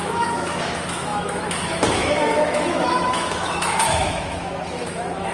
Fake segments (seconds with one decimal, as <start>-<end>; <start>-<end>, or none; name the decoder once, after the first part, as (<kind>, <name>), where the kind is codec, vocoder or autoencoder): 0.0-5.3 (autoencoder, DAC-VAE)